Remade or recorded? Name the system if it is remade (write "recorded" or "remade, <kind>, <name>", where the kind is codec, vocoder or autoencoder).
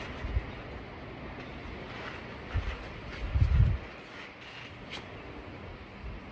recorded